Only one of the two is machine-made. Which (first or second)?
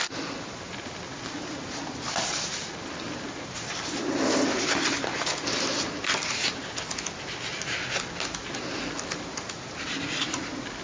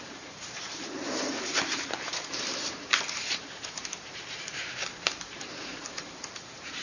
second